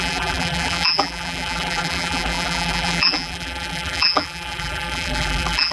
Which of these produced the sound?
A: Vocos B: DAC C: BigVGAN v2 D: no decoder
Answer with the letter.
C